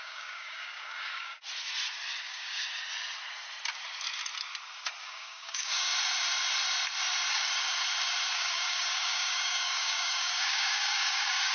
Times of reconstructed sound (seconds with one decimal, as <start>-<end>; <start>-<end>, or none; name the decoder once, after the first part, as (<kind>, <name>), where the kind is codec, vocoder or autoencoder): 0.0-1.3 (codec, DAC); 2.2-2.6; 5.0-5.9; 8.3-11.5